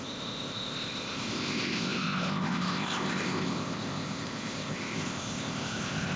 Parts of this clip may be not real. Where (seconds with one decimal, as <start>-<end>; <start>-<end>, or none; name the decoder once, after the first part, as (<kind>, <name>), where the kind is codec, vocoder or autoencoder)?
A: 0.0-6.2 (codec, ZipCodec)